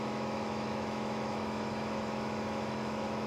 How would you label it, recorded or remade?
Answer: remade